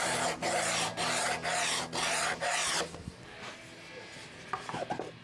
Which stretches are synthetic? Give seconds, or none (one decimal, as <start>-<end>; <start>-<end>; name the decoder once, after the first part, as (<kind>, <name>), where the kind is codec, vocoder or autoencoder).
0.0-0.9 (vocoder, BigVGAN v2); 4.0-5.2